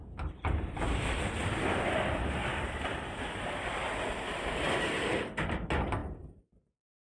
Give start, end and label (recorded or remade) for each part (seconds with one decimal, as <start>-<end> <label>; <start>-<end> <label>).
0.0-7.2 recorded